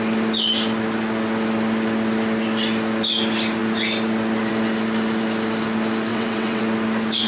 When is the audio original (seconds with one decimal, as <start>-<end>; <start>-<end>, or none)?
0.0-6.1; 6.6-7.3